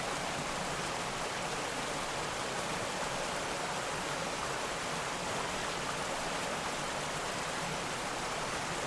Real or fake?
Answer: real